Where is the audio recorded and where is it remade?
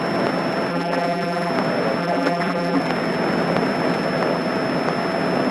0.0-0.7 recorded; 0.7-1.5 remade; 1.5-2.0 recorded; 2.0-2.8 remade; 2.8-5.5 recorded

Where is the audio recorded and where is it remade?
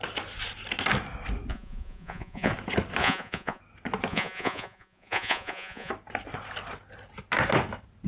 0.0-1.5 recorded; 1.5-2.5 remade; 2.5-3.0 recorded; 3.0-3.6 remade; 3.6-4.1 recorded; 4.1-5.9 remade; 5.9-8.1 recorded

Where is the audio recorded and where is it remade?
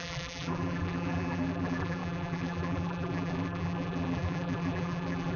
0.0-5.4 remade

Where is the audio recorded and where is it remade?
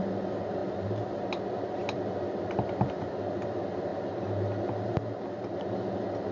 0.0-6.3 recorded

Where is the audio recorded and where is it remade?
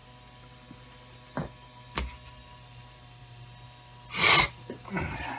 0.0-5.4 recorded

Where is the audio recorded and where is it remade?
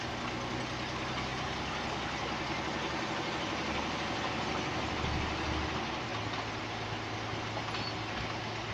0.0-8.7 recorded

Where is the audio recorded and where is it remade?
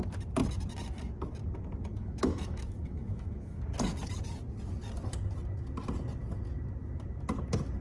0.0-2.0 recorded; 2.0-3.6 remade; 3.6-7.8 recorded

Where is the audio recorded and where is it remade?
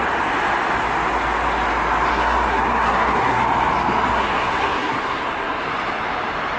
0.0-2.1 recorded; 2.1-3.4 remade; 3.4-4.1 recorded; 4.1-5.6 remade; 5.6-6.6 recorded